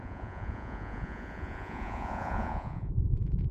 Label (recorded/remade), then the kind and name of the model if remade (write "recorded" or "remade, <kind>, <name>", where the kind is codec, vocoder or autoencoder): remade, vocoder, Vocos